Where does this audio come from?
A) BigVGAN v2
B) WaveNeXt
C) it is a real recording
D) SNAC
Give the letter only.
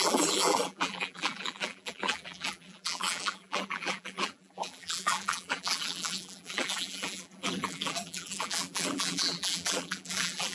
A